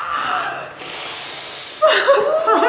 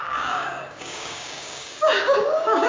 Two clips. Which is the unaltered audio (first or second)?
first